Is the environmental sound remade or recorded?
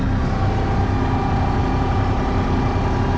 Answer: recorded